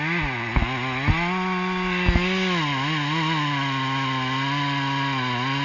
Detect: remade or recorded recorded